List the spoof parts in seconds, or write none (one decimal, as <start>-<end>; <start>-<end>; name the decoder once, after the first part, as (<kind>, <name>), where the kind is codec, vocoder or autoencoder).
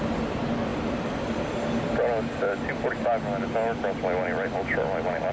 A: none